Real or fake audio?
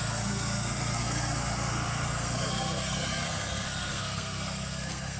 fake